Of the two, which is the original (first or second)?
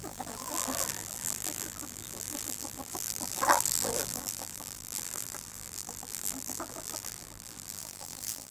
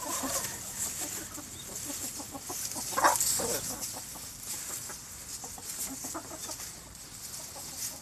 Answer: second